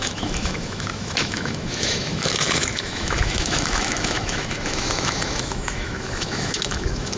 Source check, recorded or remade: remade